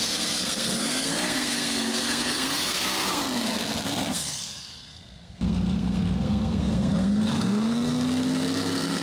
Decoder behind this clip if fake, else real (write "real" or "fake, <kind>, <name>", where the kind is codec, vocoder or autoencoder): fake, codec, SNAC